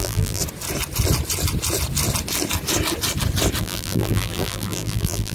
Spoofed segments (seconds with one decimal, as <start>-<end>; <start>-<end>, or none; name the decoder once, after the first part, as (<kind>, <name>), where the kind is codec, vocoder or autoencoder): 0.0-0.4 (vocoder, BigVGAN v2); 3.6-5.3